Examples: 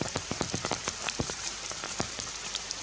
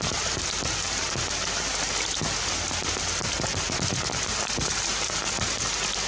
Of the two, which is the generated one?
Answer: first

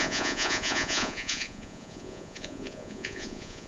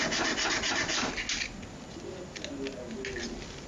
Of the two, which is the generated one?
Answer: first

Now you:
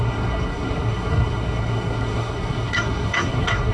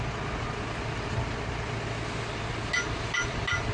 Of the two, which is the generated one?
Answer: first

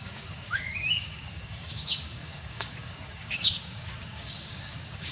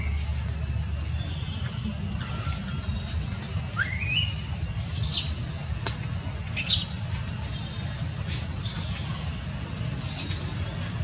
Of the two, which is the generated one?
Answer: first